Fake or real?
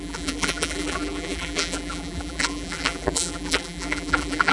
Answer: fake